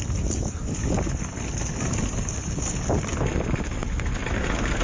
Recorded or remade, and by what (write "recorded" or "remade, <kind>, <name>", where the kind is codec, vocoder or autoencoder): recorded